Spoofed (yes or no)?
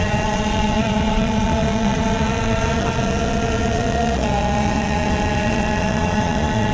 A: yes